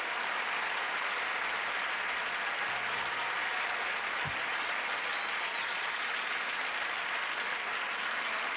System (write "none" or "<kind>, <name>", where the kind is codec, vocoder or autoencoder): none